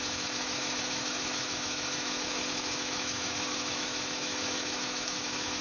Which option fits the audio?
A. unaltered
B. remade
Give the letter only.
B